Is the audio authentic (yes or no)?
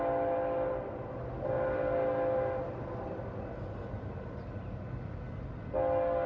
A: yes